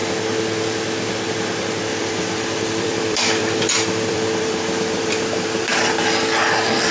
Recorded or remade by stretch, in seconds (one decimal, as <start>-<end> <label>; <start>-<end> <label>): 0.0-1.9 recorded; 1.9-6.0 remade; 6.0-6.9 recorded